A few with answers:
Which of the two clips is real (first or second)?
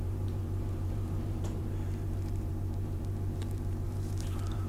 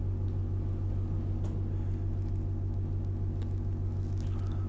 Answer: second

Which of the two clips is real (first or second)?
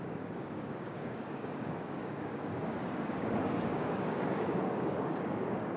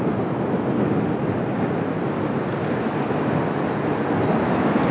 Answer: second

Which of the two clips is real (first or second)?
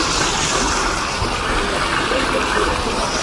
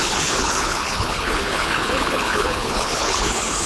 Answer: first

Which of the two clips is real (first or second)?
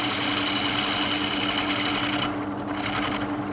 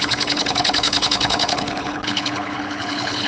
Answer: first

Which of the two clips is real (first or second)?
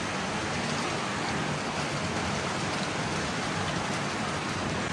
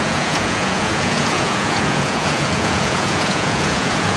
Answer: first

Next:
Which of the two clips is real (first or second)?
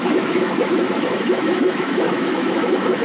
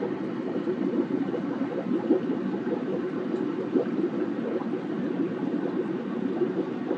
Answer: second